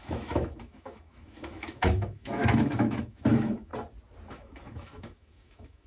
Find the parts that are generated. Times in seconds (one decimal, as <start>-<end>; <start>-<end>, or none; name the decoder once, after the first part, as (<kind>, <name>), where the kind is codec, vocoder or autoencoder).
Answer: 0.0-3.7 (autoencoder, DAC-VAE); 4.3-5.9